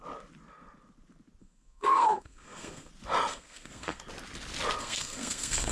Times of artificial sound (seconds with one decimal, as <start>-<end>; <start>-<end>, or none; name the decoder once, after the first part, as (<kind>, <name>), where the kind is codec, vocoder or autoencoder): 1.4-2.9 (codec, SNAC); 3.3-4.0; 4.8-5.7